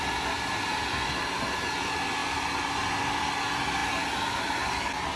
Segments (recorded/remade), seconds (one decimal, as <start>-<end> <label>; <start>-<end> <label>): 0.0-5.2 recorded